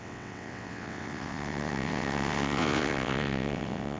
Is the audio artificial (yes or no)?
yes